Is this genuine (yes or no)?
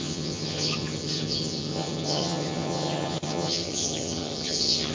no